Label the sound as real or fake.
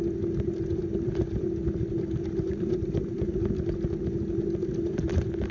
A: real